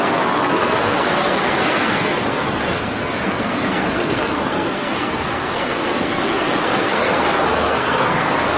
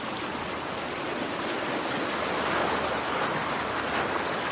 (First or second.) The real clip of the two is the second